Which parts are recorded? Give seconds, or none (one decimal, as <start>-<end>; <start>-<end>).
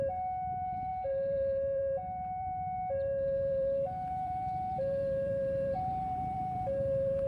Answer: none